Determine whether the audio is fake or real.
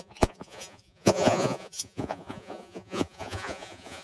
fake